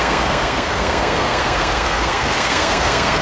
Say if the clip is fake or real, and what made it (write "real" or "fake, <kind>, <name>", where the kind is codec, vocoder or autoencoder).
fake, codec, SNAC